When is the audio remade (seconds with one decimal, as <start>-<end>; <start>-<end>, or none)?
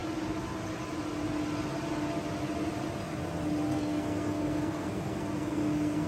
3.7-6.1